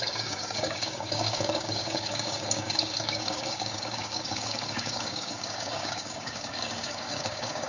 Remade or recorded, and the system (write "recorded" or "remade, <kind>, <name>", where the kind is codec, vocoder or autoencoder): remade, codec, DAC